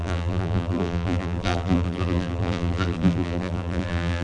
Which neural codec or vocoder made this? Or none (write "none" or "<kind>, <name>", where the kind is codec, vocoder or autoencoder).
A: vocoder, BigVGAN v2